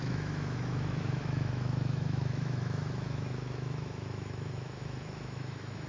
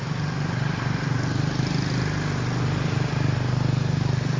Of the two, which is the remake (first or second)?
first